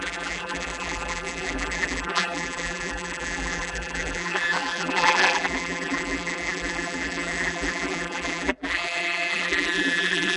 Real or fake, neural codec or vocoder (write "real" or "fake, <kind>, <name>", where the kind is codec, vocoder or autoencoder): fake, vocoder, BigVGAN v2